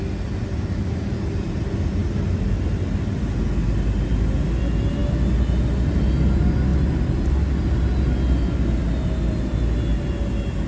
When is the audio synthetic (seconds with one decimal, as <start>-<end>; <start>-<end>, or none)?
none